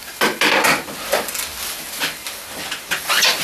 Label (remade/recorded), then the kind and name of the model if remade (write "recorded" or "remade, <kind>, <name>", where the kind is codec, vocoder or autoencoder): recorded